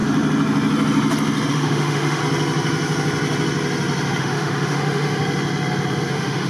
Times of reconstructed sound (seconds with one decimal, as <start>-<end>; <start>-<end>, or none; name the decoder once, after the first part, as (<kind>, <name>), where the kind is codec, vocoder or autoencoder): 1.5-2.2 (autoencoder, DAC-VAE); 4.2-5.2; 6.1-6.5